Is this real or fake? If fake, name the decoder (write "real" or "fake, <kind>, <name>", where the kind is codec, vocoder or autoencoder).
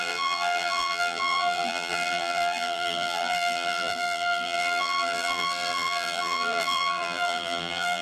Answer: fake, vocoder, BigVGAN v2